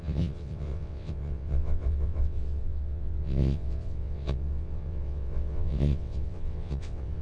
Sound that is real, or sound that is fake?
fake